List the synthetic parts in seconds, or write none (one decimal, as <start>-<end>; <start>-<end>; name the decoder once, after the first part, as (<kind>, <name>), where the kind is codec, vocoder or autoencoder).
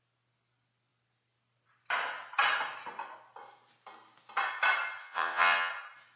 5.0-5.7 (vocoder, WaveNeXt)